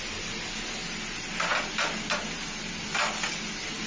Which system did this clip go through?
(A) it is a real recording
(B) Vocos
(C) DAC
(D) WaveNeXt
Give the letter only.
A